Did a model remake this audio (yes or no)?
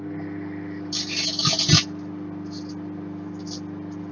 no